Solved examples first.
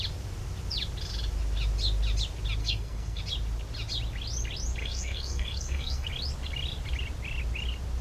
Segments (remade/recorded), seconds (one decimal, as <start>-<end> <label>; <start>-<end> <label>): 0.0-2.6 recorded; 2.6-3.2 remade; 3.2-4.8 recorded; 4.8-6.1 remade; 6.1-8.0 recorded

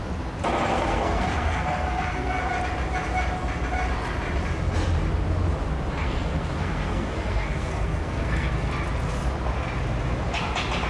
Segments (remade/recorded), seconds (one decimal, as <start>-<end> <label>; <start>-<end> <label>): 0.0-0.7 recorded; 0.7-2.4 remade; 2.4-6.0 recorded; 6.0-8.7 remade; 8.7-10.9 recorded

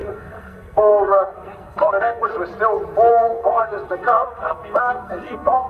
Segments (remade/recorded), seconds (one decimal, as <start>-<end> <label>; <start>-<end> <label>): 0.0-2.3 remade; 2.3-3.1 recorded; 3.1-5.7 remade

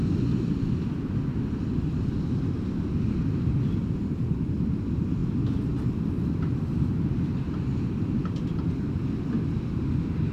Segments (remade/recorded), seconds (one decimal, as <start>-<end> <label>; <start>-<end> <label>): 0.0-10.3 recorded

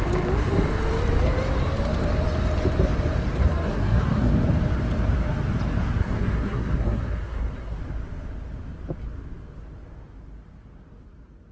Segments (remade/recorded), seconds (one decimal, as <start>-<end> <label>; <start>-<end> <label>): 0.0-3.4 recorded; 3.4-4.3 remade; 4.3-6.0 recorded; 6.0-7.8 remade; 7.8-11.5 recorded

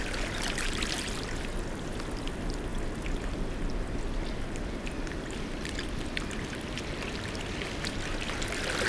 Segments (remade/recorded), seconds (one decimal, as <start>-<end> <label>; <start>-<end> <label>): 0.0-8.9 recorded

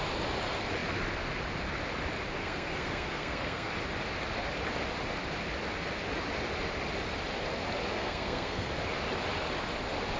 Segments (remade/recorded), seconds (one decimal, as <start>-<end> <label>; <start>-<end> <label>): 0.0-2.4 recorded; 2.4-3.7 remade; 3.7-7.9 recorded; 7.9-8.7 remade; 8.7-10.2 recorded

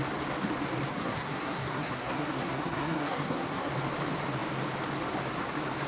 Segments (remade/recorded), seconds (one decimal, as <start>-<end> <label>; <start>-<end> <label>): 0.0-0.9 recorded; 0.9-3.7 remade; 3.7-5.9 recorded